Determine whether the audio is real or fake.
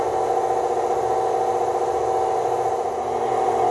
real